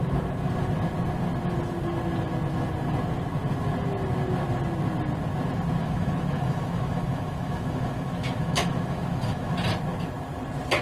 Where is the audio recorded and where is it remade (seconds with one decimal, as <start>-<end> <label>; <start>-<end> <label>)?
0.0-5.8 recorded; 5.8-9.5 remade; 9.5-10.8 recorded